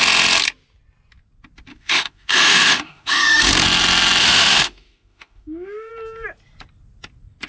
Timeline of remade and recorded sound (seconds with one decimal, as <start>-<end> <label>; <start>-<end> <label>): 0.0-1.7 recorded; 1.7-3.5 remade; 3.5-4.2 recorded; 4.2-5.9 remade; 5.9-7.5 recorded